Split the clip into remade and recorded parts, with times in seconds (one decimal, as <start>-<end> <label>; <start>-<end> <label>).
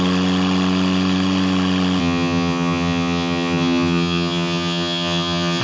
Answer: 0.0-2.0 recorded; 2.0-5.6 remade